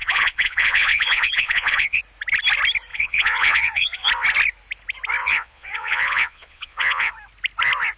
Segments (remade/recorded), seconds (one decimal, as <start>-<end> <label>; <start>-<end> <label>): 0.0-2.0 remade; 2.0-2.9 recorded; 2.9-4.1 remade; 4.1-5.2 recorded; 5.2-7.1 remade; 7.1-8.0 recorded